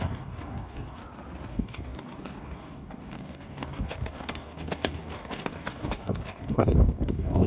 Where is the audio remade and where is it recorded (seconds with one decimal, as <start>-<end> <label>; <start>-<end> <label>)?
0.0-1.0 remade; 1.0-1.5 recorded; 1.5-7.5 remade